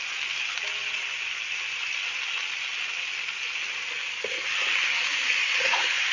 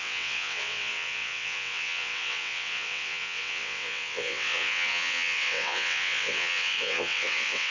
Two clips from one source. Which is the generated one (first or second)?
second